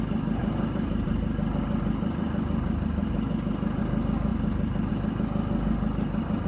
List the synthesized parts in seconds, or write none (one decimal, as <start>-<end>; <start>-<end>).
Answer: 0.4-1.2; 3.0-3.8